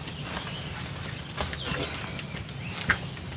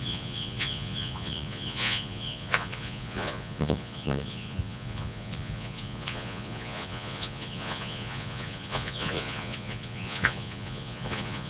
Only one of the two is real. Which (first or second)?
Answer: first